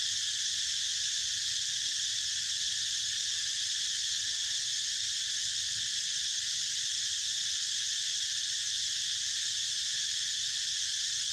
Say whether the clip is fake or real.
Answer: real